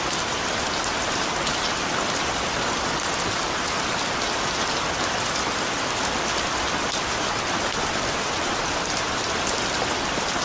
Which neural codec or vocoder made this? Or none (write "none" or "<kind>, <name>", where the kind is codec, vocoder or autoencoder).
none